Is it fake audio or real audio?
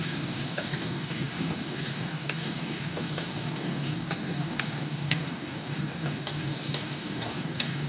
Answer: fake